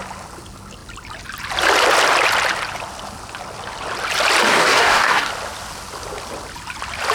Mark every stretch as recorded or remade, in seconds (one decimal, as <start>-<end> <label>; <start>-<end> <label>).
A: 0.0-4.5 recorded; 4.5-5.3 remade; 5.3-7.1 recorded